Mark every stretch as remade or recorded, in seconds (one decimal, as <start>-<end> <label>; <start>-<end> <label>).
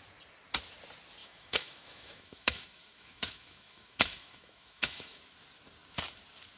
0.0-1.2 recorded; 1.2-5.2 remade; 5.2-6.6 recorded